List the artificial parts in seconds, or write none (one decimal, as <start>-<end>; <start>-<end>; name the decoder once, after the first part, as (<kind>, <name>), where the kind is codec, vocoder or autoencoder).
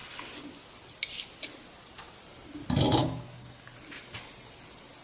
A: 3.0-3.7 (codec, DAC)